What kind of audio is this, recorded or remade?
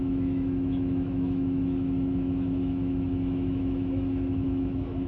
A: remade